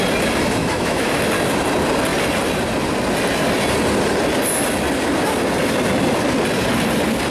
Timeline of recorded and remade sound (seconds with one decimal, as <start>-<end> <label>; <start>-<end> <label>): 0.0-0.6 recorded; 0.6-1.2 remade; 1.2-7.3 recorded